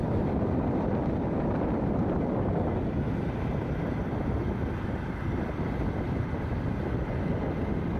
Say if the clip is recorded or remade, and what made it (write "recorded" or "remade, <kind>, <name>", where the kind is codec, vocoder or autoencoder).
recorded